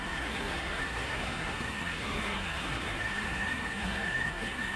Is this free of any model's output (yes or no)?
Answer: no